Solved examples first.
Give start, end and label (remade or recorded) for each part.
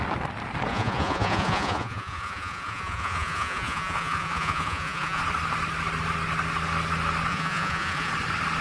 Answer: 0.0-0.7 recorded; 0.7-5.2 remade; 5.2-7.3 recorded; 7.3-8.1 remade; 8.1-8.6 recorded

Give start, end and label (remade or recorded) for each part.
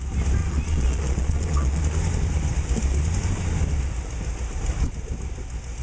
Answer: 0.0-0.4 recorded; 0.4-1.8 remade; 1.8-5.8 recorded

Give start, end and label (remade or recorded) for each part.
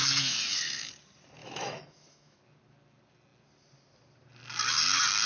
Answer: 0.0-0.9 remade; 0.9-1.4 recorded; 1.4-2.4 remade; 2.4-5.3 recorded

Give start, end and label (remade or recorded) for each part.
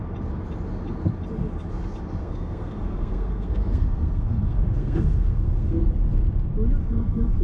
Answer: 0.0-2.2 recorded; 2.2-5.8 remade; 5.8-6.8 recorded; 6.8-7.4 remade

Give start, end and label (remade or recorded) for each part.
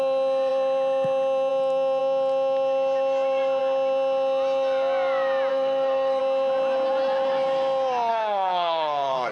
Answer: 0.0-5.5 recorded; 5.5-6.2 remade; 6.2-8.1 recorded; 8.1-9.3 remade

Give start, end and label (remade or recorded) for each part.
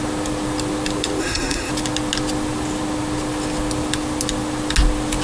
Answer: 0.0-1.2 recorded; 1.2-1.7 remade; 1.7-5.2 recorded